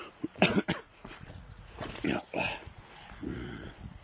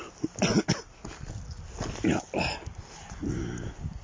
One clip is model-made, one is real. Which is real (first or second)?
second